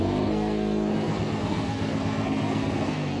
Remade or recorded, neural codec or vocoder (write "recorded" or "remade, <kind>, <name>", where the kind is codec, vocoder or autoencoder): remade, codec, SNAC